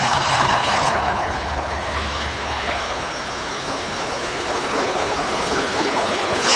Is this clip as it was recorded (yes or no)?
no